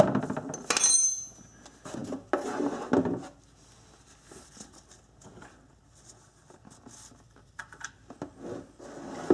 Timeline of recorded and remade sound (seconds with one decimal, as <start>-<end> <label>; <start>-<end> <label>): 0.0-9.3 recorded